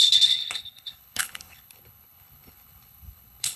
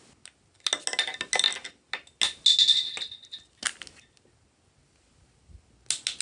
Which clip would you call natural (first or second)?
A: second